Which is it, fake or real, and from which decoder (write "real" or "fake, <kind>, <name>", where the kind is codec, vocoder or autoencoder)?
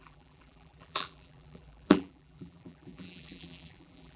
fake, vocoder, BigVGAN v2